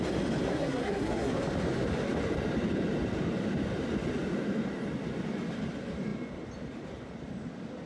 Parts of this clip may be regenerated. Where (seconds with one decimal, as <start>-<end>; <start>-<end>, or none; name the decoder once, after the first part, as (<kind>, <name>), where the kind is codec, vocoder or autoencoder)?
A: 0.5-1.3 (codec, SNAC)